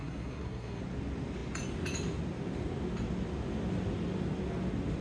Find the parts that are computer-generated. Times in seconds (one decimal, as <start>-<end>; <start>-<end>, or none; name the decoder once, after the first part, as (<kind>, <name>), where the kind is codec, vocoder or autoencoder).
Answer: 0.0-0.8 (codec, SNAC)